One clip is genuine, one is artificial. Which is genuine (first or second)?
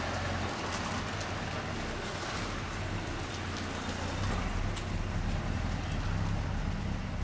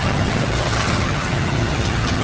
first